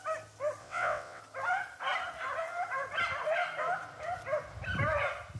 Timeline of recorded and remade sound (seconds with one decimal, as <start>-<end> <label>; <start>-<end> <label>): 0.0-0.6 recorded; 0.6-1.2 remade; 1.2-5.4 recorded